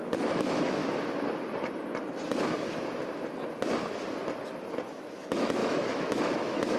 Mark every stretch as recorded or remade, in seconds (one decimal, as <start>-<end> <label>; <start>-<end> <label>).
0.0-0.8 remade; 0.8-4.9 recorded; 4.9-6.8 remade